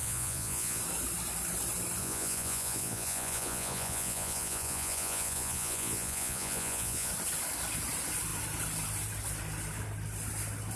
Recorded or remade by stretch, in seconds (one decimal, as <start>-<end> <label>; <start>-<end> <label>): 0.0-0.8 remade; 0.8-2.0 recorded; 2.0-7.1 remade; 7.1-10.8 recorded